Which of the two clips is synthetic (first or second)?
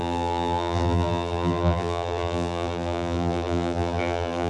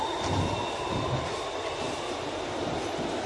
first